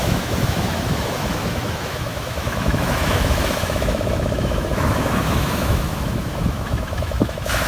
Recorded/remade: remade